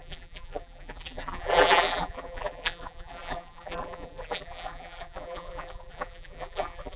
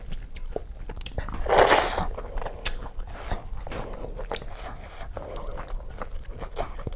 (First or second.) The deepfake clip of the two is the first